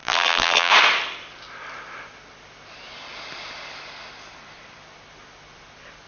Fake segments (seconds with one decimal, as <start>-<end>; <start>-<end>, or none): 0.0-0.7